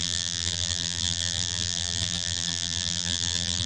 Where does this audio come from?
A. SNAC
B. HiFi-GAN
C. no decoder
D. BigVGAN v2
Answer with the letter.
D